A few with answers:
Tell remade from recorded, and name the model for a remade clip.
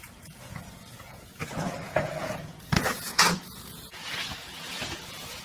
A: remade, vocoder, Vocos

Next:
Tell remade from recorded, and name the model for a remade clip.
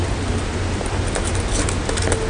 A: recorded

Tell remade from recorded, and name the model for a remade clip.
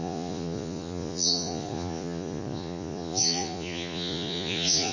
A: remade, vocoder, Vocos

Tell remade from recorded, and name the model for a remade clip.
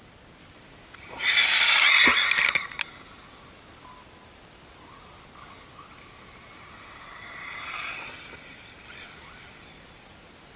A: recorded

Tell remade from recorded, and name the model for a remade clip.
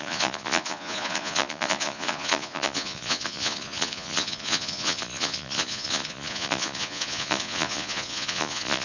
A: remade, vocoder, Vocos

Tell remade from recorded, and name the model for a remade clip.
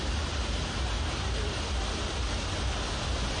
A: recorded